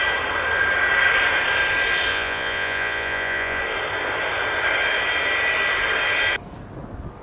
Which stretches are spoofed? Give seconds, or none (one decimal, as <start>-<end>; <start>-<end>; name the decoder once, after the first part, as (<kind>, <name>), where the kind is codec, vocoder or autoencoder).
2.1-3.6 (vocoder, Vocos)

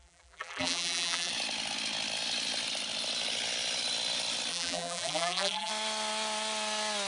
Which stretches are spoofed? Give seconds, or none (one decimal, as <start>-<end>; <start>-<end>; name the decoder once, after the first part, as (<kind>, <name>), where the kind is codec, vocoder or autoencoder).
0.0-1.3 (vocoder, BigVGAN v2); 4.5-5.7

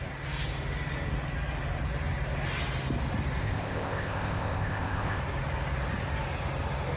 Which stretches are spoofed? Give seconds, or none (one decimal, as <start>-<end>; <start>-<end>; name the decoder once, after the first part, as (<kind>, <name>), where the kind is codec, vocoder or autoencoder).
3.4-5.2 (codec, ZipCodec)